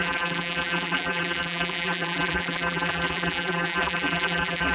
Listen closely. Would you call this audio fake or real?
fake